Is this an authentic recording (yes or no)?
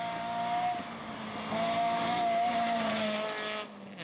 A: yes